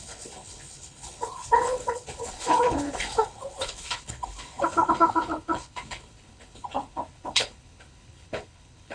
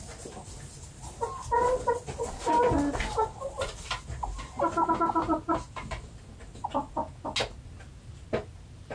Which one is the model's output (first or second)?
first